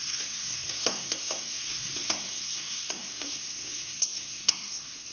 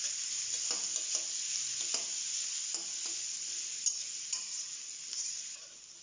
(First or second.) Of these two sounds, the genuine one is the second